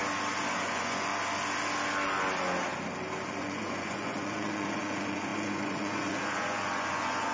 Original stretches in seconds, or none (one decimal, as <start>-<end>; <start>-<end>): 0.0-0.7; 1.1-3.4